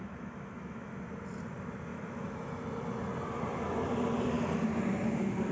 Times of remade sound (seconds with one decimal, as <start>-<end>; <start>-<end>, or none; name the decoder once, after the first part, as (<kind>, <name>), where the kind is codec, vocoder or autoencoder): 0.0-0.9 (autoencoder, DAC-VAE); 1.9-2.5